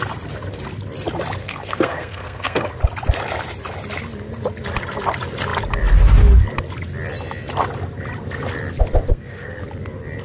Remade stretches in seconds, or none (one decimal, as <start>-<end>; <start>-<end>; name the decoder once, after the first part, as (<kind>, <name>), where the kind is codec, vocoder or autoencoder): 1.4-2.7 (codec, SNAC); 9.1-9.6